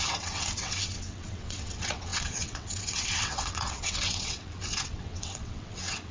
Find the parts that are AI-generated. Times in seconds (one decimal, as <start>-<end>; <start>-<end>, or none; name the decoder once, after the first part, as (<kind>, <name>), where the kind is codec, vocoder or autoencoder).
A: 0.0-6.1 (vocoder, WaveNeXt)